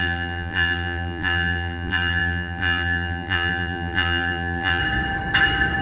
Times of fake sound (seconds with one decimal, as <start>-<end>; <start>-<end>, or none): 0.0-4.8

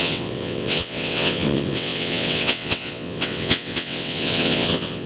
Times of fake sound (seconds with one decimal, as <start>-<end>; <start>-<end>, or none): 0.0-5.1

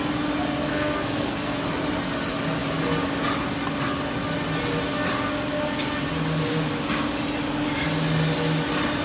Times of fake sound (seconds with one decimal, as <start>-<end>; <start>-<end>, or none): 0.7-1.6

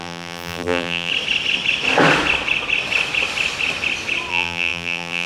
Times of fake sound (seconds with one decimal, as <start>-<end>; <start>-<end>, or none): 0.0-1.1; 4.3-5.3